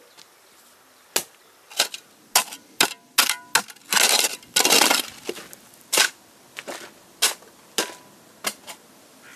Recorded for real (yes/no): yes